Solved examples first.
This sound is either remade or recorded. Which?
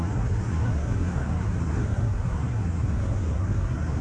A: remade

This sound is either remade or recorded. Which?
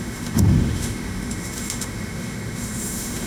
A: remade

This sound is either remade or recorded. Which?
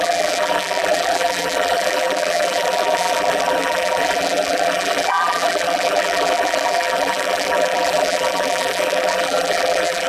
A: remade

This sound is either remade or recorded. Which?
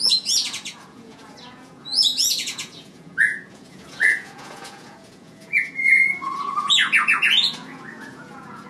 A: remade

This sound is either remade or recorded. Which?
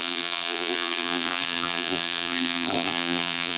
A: remade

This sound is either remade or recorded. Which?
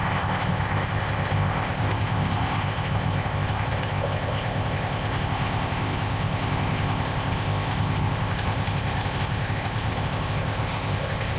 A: remade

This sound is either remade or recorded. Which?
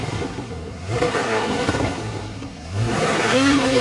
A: remade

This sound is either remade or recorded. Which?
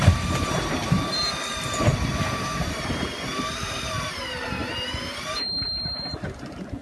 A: remade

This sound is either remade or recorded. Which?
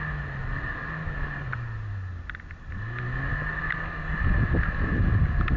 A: recorded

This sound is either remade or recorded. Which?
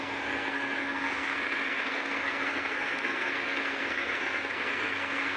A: remade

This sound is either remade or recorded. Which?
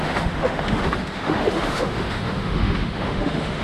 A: remade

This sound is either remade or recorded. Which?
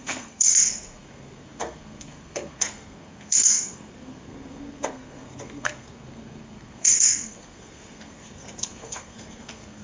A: remade